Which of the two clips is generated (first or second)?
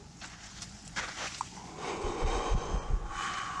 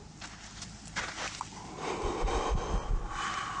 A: first